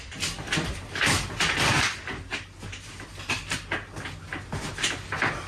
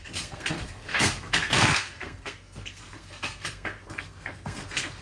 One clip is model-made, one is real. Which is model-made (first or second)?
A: second